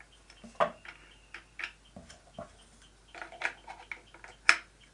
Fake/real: real